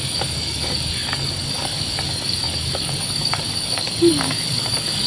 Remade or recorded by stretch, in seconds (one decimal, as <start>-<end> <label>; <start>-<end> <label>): 0.0-5.1 remade